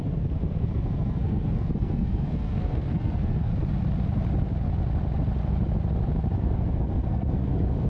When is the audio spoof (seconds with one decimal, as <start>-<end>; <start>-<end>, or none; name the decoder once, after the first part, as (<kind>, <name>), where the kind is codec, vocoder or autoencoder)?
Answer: 0.0-3.5 (codec, SNAC); 6.4-7.9